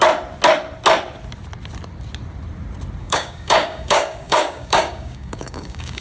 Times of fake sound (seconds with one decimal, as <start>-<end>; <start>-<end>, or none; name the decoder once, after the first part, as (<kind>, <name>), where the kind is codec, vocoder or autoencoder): 3.0-6.0 (codec, DAC)